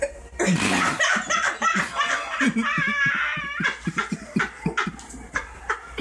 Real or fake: real